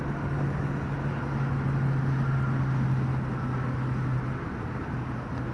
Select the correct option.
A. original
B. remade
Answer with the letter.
A